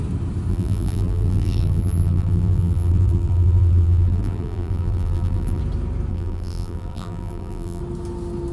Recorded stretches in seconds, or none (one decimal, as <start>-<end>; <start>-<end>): 0.0-0.5; 5.6-6.1; 7.8-8.5